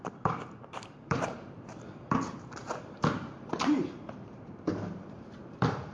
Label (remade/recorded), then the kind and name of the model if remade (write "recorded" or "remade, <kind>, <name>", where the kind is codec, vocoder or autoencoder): remade, vocoder, BigVGAN v2